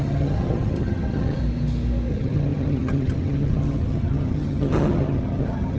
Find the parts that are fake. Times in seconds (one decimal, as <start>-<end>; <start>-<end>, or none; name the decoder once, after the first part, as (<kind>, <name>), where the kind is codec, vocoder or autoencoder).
0.0-1.4 (vocoder, HiFi-GAN); 2.1-5.8